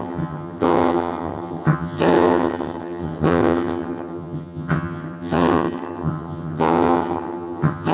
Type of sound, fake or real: fake